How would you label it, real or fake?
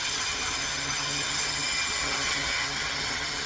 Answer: fake